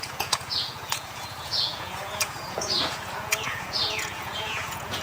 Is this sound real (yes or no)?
no